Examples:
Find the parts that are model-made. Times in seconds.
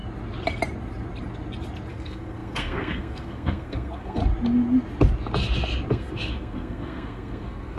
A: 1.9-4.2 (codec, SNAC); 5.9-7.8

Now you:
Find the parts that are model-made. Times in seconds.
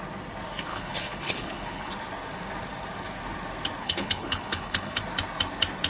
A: 0.7-1.9 (codec, HILCodec); 3.8-5.0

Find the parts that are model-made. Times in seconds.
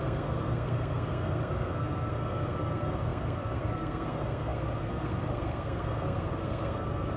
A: 0.0-7.2 (codec, SNAC)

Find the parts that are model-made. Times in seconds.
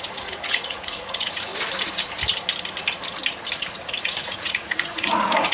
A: 0.0-1.5 (vocoder, Vocos); 3.6-5.5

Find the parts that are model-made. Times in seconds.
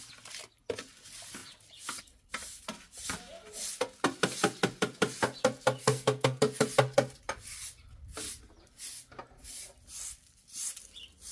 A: 5.8-6.4 (codec, SNAC)